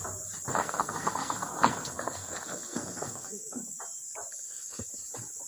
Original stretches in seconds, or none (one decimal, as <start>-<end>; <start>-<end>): 0.0-0.5; 3.8-4.3; 4.9-5.5